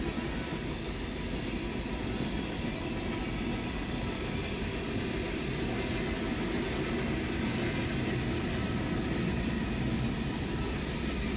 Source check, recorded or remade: recorded